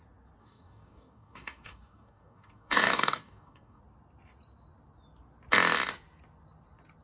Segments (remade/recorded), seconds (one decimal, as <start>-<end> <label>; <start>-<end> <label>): 0.0-0.4 recorded; 0.4-3.8 remade; 3.8-7.0 recorded